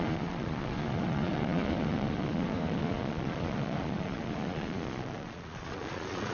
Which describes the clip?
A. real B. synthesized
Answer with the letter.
B